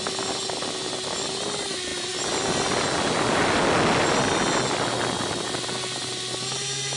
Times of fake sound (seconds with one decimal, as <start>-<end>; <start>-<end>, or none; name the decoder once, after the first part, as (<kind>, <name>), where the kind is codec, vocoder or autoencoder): none